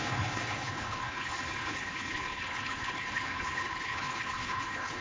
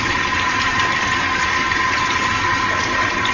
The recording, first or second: second